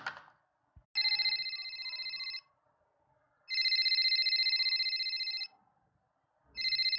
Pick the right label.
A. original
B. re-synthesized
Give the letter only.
A